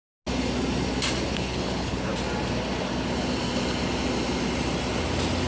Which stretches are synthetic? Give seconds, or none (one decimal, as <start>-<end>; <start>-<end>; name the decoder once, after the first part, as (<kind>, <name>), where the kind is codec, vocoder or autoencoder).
1.3-2.1 (codec, HILCodec)